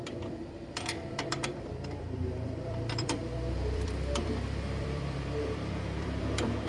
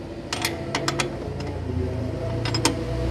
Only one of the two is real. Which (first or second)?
second